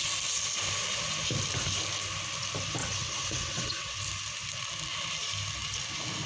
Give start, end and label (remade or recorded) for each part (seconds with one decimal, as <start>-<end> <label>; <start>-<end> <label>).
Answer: 0.0-2.8 recorded; 2.8-4.0 remade; 4.0-6.3 recorded